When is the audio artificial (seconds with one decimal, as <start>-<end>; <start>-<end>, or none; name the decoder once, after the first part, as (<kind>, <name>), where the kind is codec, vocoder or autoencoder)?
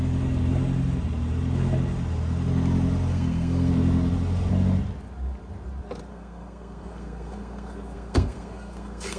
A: 3.1-3.7 (codec, SNAC); 6.1-9.2